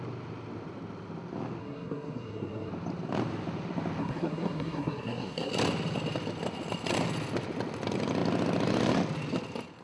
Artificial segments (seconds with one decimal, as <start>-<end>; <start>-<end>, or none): 1.6-2.7; 4.0-5.5